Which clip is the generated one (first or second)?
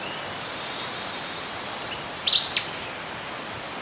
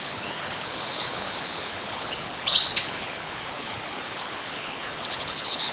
second